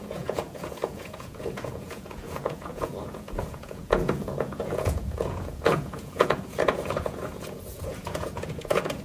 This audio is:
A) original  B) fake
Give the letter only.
B